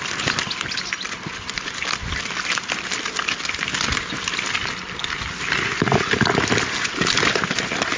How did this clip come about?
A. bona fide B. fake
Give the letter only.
A